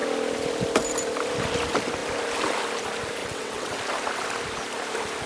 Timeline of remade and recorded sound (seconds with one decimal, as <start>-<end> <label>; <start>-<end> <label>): 0.0-3.2 recorded; 3.2-3.8 remade; 3.8-5.3 recorded